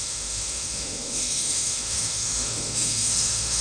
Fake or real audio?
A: fake